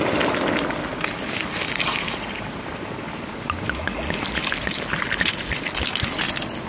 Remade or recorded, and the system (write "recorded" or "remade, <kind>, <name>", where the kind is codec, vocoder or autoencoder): recorded